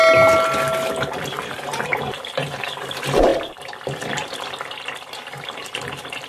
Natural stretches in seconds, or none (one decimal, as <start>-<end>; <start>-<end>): 0.0-6.3